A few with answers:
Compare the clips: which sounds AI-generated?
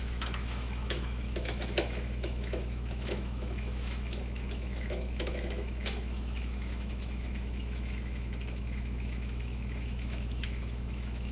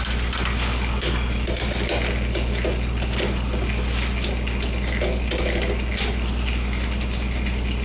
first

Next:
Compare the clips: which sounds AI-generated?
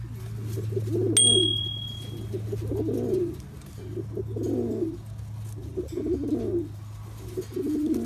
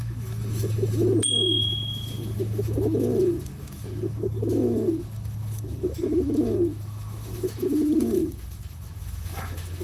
second